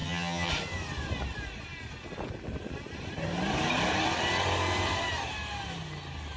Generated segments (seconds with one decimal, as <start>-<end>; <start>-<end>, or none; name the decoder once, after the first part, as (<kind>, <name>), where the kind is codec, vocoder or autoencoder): 0.0-0.5 (vocoder, HiFi-GAN)